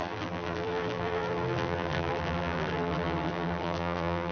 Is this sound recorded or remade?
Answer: remade